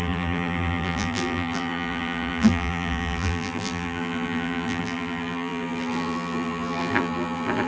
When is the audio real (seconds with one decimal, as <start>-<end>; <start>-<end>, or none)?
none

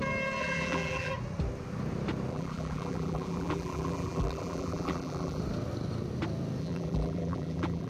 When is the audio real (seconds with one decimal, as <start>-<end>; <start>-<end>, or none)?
0.0-0.4; 1.1-2.3; 5.4-6.6

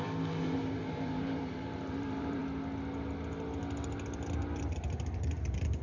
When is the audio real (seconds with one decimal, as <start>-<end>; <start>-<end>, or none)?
2.4-4.6

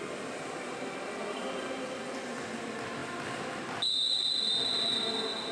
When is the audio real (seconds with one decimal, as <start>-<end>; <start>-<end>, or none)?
0.0-5.5

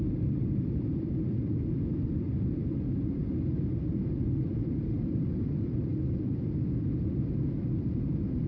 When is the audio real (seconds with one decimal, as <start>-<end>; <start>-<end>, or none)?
5.9-7.0